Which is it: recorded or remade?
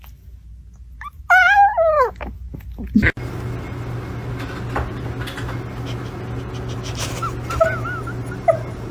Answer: recorded